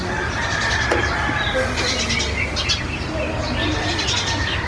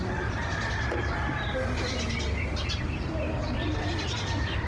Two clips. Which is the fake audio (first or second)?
second